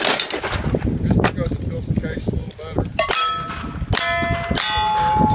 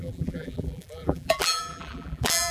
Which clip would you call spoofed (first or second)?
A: second